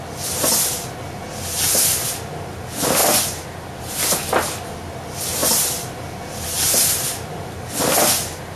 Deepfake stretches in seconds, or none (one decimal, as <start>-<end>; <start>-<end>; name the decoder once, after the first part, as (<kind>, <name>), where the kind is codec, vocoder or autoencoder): 5.4-7.7 (vocoder, BigVGAN v2)